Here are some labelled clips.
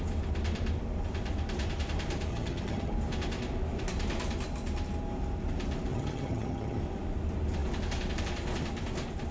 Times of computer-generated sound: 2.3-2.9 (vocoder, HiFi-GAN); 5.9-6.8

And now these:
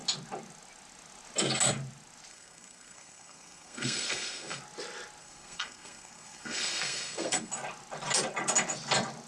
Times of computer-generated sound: 2.3-4.6 (codec, SNAC); 5.2-7.5